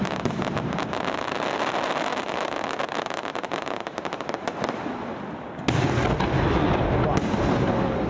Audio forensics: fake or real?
real